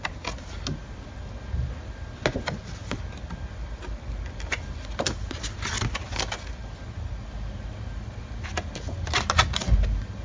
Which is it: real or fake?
real